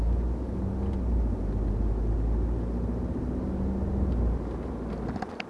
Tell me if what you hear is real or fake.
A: real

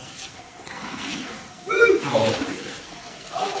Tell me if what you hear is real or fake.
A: fake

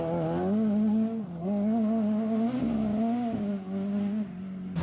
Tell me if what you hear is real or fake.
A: real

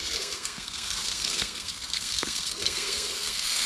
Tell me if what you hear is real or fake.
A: fake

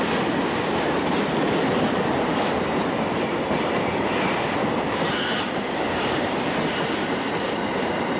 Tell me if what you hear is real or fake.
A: real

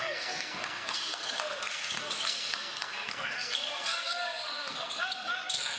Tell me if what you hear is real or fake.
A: fake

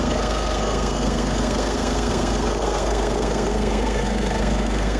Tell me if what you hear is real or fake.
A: fake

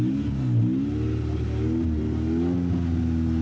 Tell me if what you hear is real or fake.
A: real